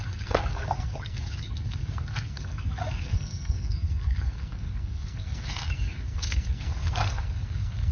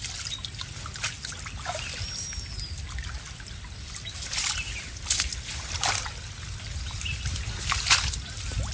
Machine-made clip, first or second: first